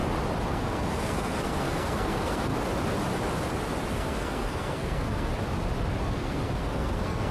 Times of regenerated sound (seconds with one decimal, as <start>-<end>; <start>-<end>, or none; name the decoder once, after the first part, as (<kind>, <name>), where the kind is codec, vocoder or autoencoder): 0.5-2.5 (codec, SNAC); 3.9-5.3; 6.0-7.3